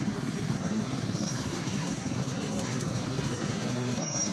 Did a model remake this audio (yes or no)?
yes